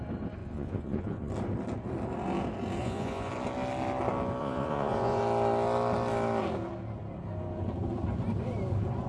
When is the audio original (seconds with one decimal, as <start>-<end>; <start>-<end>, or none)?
0.0-0.4; 1.3-2.8; 3.3-4.4; 5.2-9.1